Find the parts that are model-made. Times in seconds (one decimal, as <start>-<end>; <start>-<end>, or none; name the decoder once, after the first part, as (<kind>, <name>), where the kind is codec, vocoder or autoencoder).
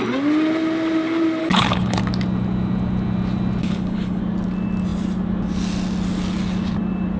1.4-2.0 (codec, HILCodec); 3.6-4.2